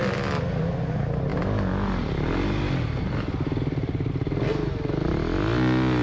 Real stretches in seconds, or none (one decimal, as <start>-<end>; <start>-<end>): 0.0-6.0